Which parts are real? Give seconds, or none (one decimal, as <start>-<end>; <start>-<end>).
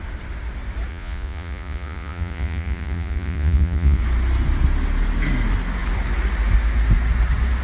0.0-0.9; 4.0-7.6